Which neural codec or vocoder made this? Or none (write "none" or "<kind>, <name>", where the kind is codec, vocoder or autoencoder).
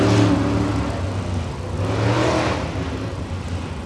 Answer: none